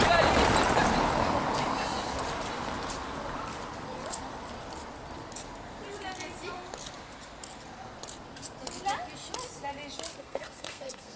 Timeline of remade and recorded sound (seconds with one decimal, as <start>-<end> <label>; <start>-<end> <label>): 0.0-10.2 recorded; 10.2-11.2 remade